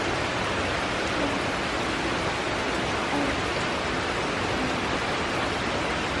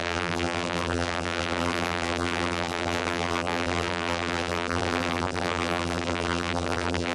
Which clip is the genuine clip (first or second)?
first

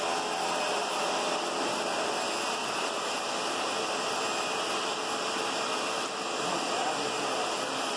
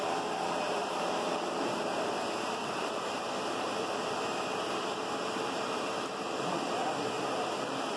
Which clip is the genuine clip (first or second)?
first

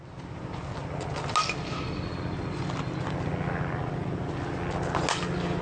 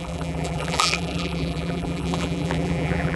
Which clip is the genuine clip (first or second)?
first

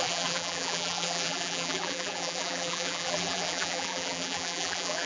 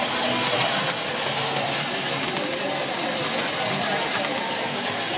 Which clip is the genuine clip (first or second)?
second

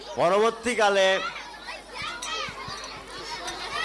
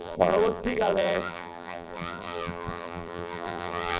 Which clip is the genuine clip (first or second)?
first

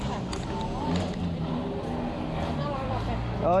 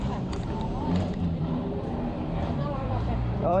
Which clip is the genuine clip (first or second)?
first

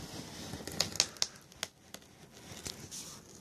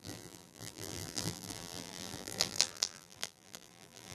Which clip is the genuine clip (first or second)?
first